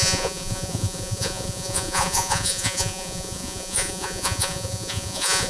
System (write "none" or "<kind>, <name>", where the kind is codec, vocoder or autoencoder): vocoder, Vocos